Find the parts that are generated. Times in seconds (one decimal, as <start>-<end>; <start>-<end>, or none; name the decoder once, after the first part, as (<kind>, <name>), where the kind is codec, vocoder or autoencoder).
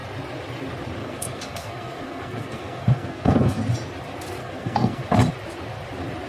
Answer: 1.0-3.6 (codec, SNAC); 4.4-5.0